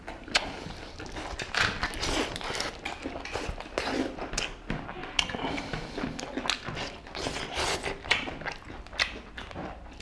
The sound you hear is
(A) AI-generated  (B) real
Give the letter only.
B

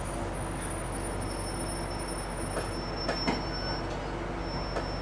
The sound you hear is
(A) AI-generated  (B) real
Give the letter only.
B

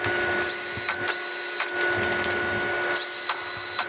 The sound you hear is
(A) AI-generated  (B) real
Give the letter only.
B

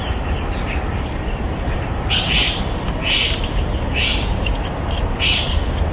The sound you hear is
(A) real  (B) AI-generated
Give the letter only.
A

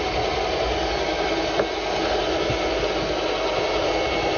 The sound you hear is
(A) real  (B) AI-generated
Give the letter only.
A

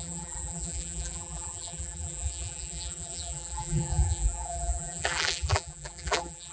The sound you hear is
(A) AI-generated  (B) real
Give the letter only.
A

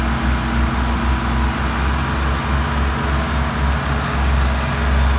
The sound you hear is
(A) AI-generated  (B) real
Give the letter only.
B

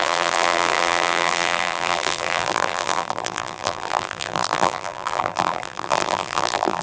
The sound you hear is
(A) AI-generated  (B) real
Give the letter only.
A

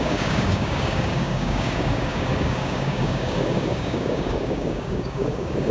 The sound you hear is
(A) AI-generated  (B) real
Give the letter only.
A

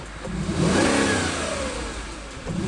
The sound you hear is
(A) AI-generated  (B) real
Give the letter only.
B